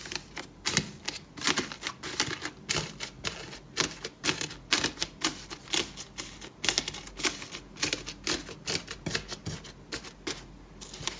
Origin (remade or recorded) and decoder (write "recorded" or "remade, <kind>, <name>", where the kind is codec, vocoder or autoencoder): recorded